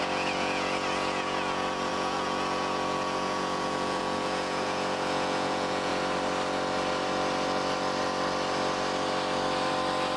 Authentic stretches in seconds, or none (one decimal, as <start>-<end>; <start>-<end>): 5.9-10.2